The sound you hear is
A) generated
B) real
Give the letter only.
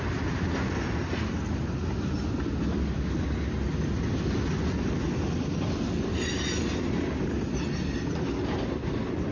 B